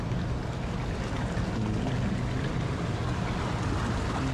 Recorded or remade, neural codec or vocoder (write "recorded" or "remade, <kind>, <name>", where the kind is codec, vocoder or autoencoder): recorded